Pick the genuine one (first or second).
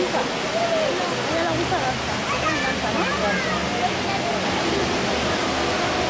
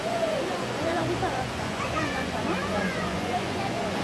first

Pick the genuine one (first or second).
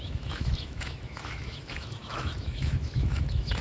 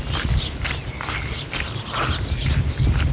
second